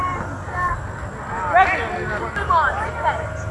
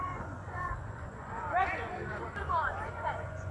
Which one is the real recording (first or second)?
first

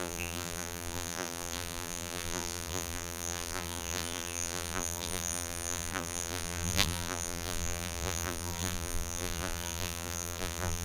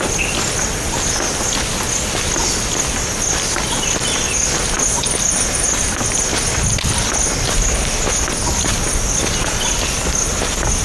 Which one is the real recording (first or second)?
second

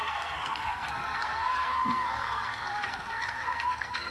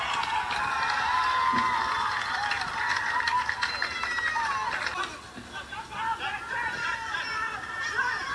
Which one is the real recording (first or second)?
second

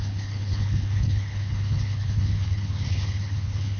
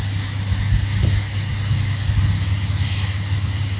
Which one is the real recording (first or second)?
second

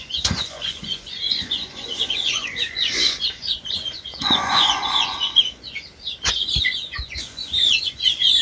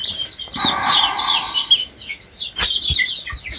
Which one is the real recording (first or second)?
second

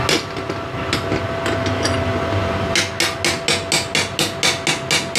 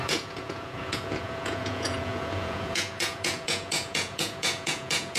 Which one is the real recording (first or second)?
first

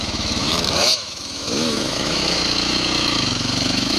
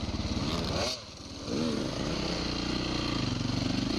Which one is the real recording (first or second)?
second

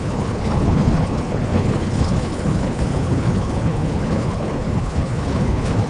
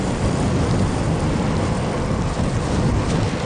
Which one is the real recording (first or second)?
second